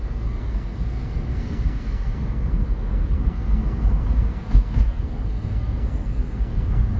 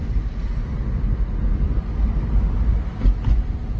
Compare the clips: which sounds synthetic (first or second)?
first